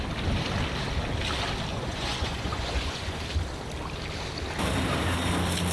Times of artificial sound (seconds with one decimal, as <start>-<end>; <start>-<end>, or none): 1.7-3.2